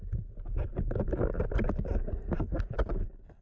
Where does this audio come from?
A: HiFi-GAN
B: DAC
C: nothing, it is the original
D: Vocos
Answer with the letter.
C